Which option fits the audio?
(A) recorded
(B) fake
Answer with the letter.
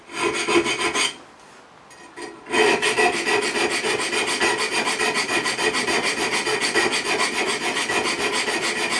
A